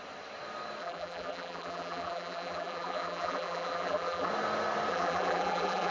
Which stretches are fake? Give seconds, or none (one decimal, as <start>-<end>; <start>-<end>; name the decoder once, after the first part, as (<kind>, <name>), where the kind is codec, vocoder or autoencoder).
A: 0.8-4.3 (vocoder, BigVGAN v2); 4.9-5.9